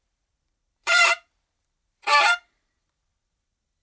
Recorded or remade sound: remade